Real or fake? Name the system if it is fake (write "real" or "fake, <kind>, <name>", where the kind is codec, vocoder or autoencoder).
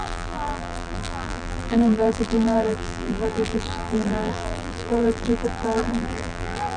fake, vocoder, BigVGAN v2